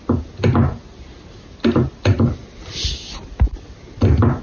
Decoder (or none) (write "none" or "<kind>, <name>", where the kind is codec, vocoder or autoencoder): none